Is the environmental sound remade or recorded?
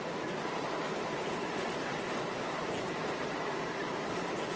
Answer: remade